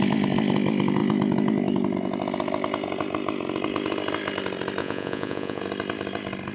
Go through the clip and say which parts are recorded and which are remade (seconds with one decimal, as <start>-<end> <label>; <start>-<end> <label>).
0.0-4.8 recorded; 4.8-5.6 remade; 5.6-6.5 recorded